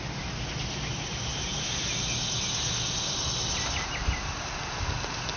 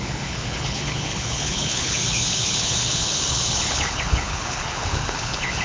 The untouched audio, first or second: first